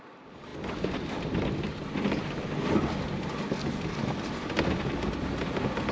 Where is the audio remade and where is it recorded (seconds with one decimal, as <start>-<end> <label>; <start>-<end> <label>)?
0.0-5.9 recorded